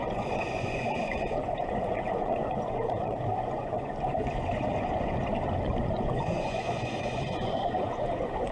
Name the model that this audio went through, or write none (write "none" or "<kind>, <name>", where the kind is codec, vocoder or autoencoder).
vocoder, Vocos